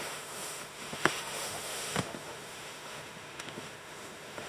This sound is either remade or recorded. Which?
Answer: remade